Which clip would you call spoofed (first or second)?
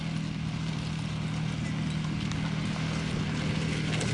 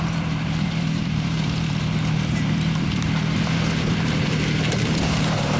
second